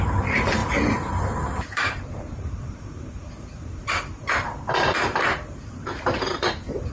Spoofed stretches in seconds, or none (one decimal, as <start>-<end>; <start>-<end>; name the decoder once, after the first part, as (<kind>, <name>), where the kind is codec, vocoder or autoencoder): 0.0-6.9 (vocoder, BigVGAN v2)